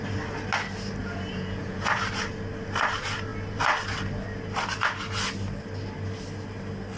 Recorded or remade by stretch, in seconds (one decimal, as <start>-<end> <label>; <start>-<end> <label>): 0.0-1.0 recorded; 1.0-1.9 remade; 1.9-7.0 recorded